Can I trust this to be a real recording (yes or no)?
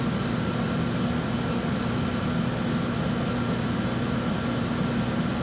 yes